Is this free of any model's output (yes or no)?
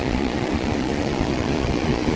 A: no